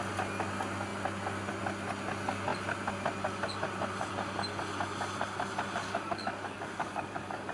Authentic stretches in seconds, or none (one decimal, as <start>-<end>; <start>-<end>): 0.0-5.8